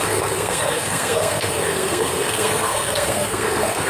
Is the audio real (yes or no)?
no